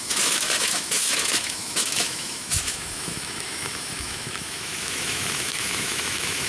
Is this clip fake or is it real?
fake